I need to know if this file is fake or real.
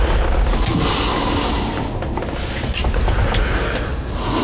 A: real